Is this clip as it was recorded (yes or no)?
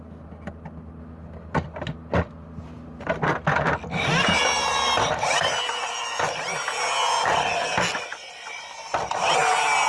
yes